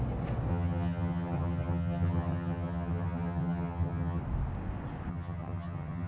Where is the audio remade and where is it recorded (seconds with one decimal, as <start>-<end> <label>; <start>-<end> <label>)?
0.0-0.5 recorded; 0.5-4.2 remade; 4.2-5.1 recorded; 5.1-6.1 remade